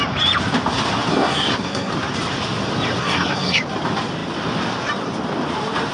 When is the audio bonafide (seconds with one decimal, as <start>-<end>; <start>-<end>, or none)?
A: 0.0-1.1; 1.9-3.0; 3.6-5.9